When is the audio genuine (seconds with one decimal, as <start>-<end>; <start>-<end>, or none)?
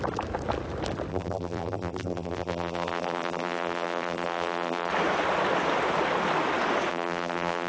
0.0-1.1; 4.9-6.9